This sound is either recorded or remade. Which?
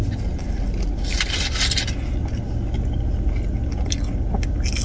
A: recorded